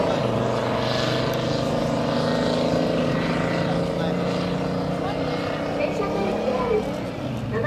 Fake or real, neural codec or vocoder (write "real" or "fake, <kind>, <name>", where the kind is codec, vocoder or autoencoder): real